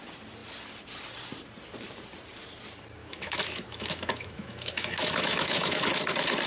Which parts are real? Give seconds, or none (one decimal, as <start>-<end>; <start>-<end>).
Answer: 0.0-3.0; 5.9-6.5